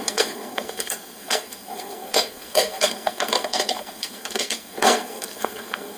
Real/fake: fake